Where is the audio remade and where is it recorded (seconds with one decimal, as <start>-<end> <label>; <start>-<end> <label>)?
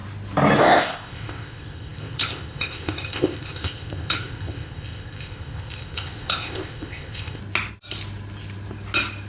0.0-0.6 recorded; 0.6-7.4 remade; 7.4-9.3 recorded